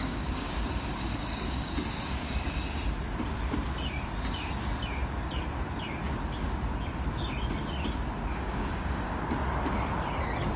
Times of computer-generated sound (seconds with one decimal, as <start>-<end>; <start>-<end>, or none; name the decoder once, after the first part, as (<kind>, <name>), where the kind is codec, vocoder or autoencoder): 0.0-2.6 (codec, DAC); 8.3-9.2